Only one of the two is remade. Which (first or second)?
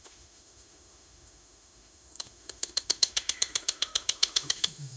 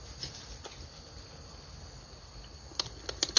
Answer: first